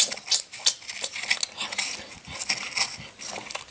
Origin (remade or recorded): recorded